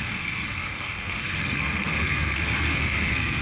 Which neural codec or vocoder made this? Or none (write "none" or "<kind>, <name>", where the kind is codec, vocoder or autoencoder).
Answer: codec, SNAC